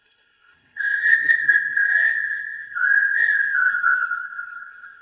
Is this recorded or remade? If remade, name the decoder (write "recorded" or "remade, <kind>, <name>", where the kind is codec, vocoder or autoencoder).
remade, codec, SNAC